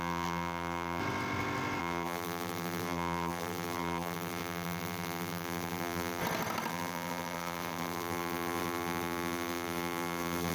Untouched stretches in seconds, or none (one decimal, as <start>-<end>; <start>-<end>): 1.0-1.8; 6.2-6.7